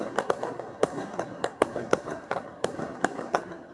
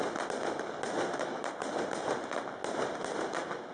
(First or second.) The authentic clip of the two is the second